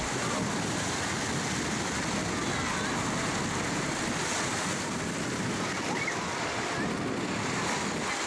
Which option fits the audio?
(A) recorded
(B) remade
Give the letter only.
A